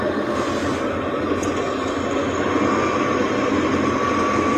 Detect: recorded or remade recorded